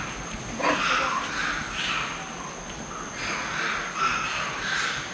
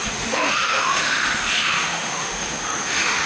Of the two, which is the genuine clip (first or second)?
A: first